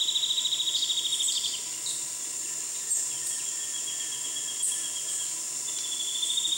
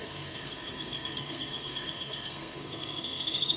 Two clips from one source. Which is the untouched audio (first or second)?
first